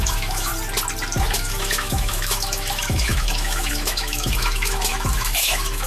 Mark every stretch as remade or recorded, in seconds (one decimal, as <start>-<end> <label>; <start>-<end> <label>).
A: 0.0-0.5 remade; 0.5-1.2 recorded; 1.2-5.9 remade